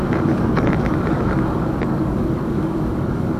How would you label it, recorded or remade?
remade